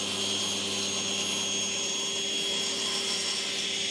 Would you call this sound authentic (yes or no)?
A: yes